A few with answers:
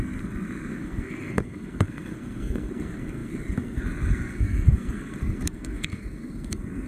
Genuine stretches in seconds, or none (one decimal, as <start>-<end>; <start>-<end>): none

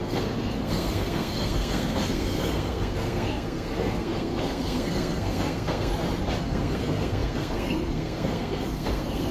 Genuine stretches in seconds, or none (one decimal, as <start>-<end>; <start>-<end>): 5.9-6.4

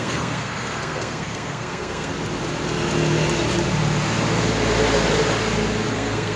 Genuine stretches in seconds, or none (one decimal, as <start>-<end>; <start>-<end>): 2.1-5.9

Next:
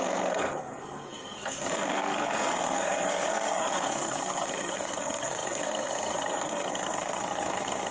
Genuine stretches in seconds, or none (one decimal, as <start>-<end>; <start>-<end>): none

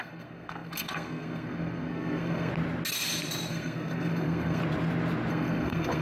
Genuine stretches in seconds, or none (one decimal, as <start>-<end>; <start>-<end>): 2.5-3.5; 4.6-5.3

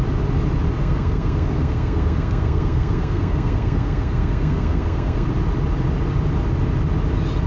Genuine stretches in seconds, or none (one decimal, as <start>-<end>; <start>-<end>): 0.0-0.8; 5.3-7.5

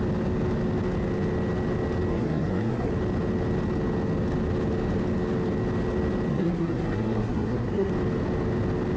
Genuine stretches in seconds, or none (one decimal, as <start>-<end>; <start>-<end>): 0.0-2.1; 2.9-6.3; 7.9-9.0

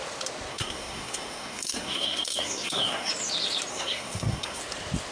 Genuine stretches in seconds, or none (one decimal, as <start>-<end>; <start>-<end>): 0.0-0.5; 3.1-3.7; 4.6-5.1